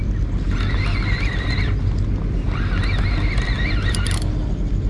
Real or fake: real